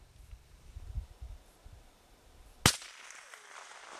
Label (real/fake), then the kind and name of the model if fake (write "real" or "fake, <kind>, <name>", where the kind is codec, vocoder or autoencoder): real